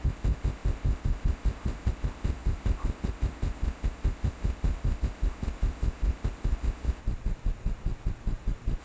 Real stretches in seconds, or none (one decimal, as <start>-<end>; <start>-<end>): 7.0-8.8